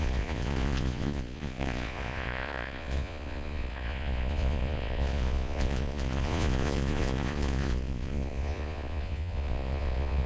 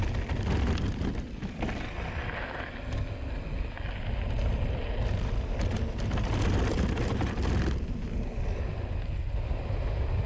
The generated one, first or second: first